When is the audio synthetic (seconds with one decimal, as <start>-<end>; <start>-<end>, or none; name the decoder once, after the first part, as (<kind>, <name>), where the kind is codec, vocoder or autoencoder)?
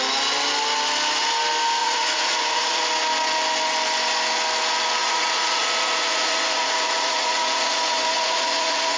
1.8-2.8 (vocoder, Vocos); 5.0-9.0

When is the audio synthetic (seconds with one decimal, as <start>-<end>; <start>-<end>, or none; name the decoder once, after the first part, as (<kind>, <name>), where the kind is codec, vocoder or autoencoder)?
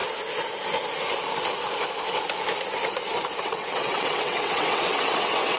3.4-5.6 (vocoder, WaveNeXt)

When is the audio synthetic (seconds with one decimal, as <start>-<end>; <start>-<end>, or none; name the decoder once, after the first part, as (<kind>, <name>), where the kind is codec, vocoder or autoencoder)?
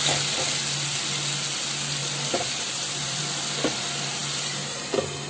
2.0-3.2 (vocoder, BigVGAN v2)